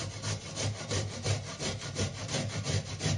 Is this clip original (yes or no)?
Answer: yes